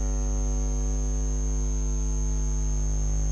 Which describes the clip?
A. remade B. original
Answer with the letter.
B